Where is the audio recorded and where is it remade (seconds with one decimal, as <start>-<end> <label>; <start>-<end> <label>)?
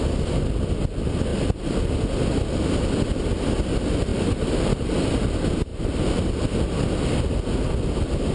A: 0.0-1.3 recorded; 1.3-1.9 remade; 1.9-4.1 recorded; 4.1-4.7 remade; 4.7-5.7 recorded; 5.7-6.2 remade; 6.2-8.3 recorded